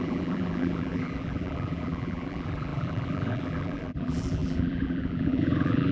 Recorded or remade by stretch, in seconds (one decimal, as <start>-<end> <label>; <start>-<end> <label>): 0.0-5.9 remade